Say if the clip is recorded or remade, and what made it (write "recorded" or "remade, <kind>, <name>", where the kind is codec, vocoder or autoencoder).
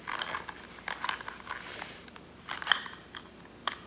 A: recorded